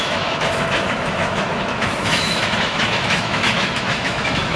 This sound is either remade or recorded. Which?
remade